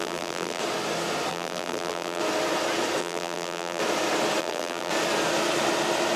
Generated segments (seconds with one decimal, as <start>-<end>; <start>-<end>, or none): 0.0-0.6; 1.3-2.2; 3.0-3.8; 4.4-4.9